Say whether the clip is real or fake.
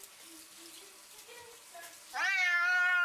real